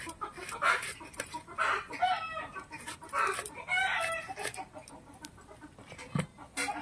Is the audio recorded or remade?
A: recorded